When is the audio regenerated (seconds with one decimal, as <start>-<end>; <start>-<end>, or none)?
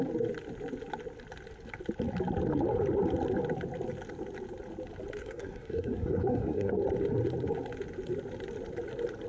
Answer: 5.2-6.7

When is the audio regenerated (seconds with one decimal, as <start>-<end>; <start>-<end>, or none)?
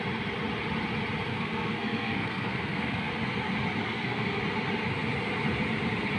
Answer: 1.3-3.1; 3.8-4.4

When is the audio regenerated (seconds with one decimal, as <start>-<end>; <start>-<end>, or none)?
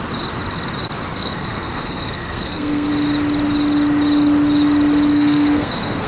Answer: 1.1-2.9; 5.1-6.1